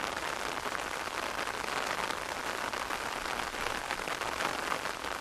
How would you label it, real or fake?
real